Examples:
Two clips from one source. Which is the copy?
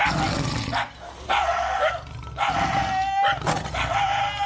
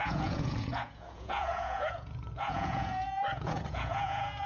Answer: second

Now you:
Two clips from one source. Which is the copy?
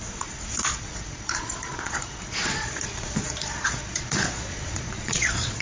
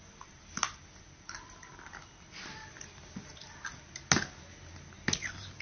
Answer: first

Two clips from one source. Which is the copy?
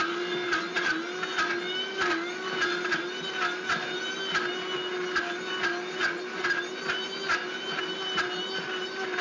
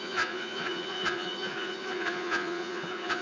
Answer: second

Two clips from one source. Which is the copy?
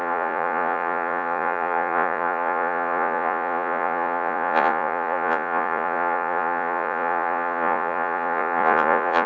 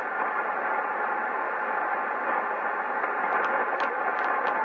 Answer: first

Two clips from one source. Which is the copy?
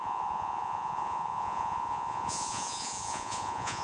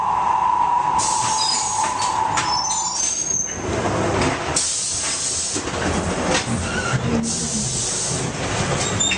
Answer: first